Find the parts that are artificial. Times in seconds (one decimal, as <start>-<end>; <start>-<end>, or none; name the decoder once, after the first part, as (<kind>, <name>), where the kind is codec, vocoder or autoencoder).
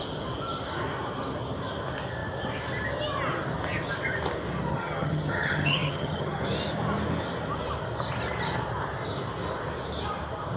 4.7-6.4 (vocoder, HiFi-GAN)